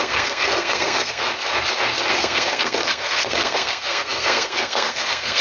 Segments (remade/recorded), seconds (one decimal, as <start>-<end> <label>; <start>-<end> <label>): 0.0-1.3 remade; 1.3-2.1 recorded; 2.1-5.4 remade